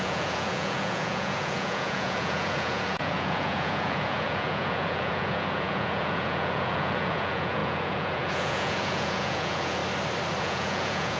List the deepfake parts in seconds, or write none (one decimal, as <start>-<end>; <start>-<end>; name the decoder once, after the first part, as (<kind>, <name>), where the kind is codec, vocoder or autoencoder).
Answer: 0.0-9.8 (vocoder, Vocos); 10.4-11.2